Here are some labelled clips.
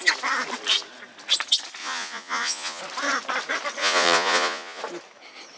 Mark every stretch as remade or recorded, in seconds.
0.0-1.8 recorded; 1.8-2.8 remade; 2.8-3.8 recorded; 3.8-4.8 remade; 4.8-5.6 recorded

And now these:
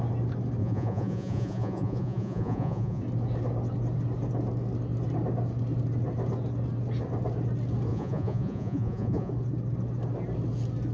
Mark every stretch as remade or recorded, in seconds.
0.0-0.6 recorded; 0.6-3.0 remade; 3.0-7.9 recorded; 7.9-9.3 remade; 9.3-10.9 recorded